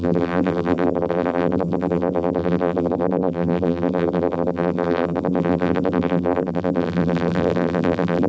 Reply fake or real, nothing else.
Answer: fake